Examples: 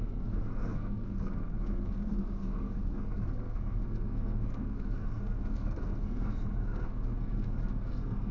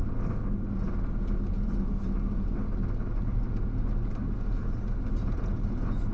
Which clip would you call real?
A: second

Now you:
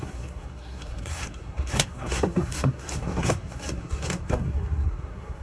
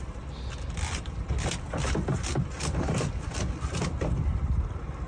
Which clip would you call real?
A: second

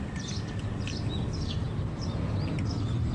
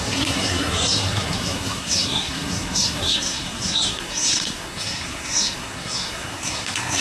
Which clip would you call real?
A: first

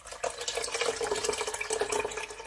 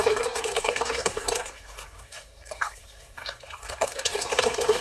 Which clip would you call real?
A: first